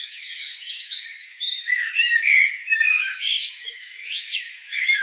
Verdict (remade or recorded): remade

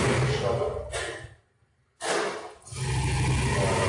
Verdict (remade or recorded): recorded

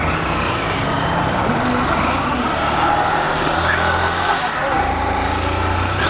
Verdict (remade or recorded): recorded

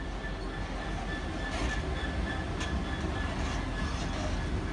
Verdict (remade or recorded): recorded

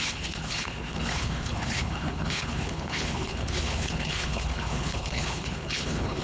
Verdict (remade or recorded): remade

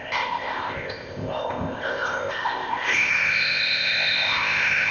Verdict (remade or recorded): remade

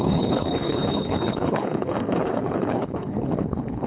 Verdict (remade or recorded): remade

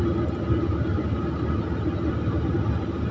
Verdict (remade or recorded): recorded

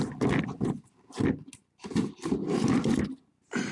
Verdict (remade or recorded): recorded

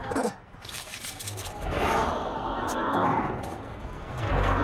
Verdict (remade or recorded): remade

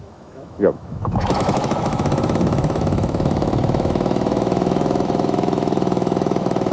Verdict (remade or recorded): remade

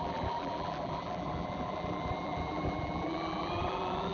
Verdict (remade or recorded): remade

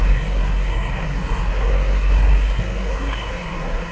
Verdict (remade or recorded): remade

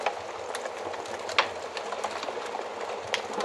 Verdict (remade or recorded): recorded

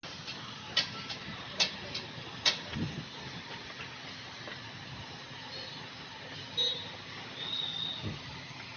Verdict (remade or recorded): recorded